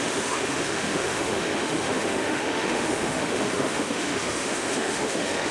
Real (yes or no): no